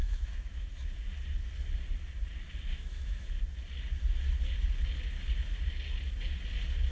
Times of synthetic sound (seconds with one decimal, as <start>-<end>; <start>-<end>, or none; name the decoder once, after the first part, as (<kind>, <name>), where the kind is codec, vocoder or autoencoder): 0.0-0.7 (autoencoder, DAC-VAE); 2.7-3.3